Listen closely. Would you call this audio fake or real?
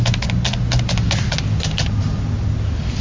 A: real